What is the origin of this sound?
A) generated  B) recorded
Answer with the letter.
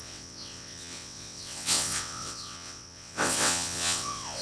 A